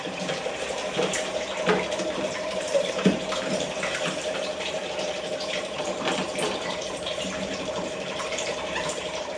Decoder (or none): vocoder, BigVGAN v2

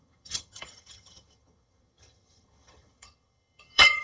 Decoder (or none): vocoder, HiFi-GAN